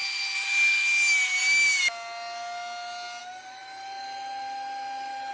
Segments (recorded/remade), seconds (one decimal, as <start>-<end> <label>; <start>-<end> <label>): 0.0-5.3 recorded